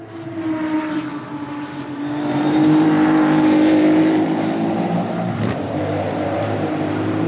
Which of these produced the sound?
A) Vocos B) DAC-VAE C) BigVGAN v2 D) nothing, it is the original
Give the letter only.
C